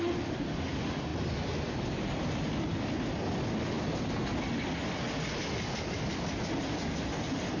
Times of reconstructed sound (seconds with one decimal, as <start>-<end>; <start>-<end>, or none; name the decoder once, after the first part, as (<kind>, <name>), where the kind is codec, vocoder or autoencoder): none